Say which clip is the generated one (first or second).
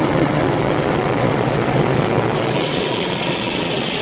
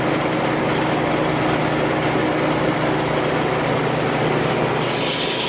first